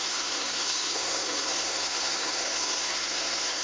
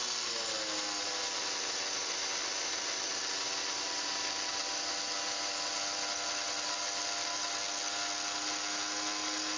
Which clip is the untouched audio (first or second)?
second